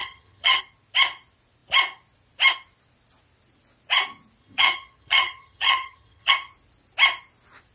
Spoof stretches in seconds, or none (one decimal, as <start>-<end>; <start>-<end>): 0.0-0.6; 4.4-6.3

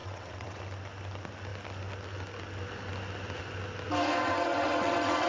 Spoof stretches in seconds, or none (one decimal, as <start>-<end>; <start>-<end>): 0.0-0.6; 4.2-5.3